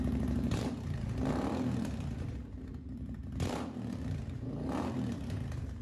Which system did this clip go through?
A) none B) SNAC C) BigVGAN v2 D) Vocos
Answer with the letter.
C